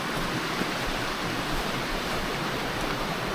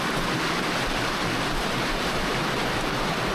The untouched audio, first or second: second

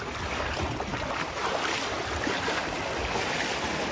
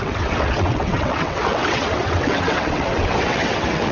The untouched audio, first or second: first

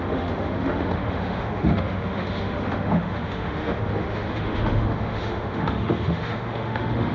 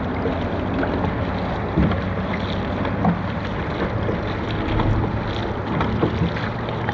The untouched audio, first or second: second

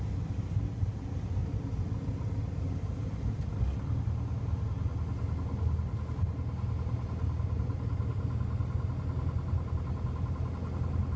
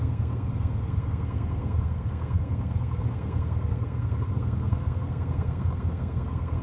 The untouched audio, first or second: first